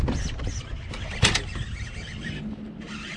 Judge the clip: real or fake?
real